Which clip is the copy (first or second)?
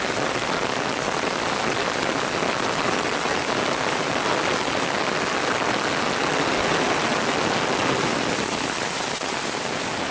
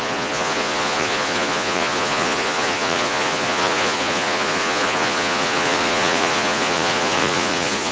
second